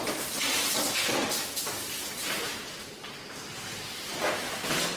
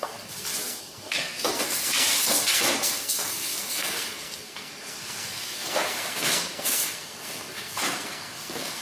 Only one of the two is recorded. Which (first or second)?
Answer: first